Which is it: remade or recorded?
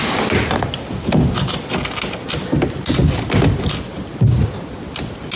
recorded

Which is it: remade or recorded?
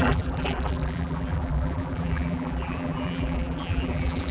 remade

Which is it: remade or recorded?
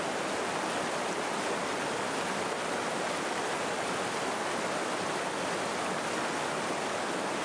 recorded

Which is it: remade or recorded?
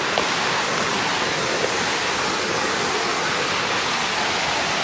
recorded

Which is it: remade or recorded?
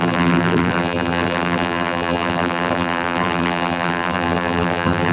remade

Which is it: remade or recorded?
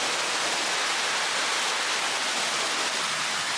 recorded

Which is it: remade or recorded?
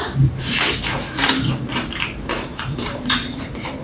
remade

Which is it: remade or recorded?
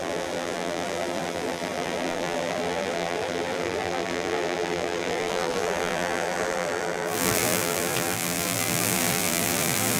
remade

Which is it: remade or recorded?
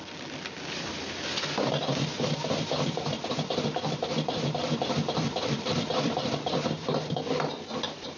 remade